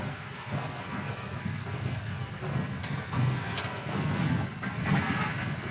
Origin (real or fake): fake